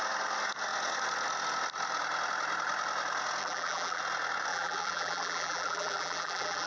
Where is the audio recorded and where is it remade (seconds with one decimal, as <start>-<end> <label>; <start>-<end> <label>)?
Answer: 0.0-3.4 recorded; 3.4-4.0 remade; 4.0-4.5 recorded; 4.5-6.7 remade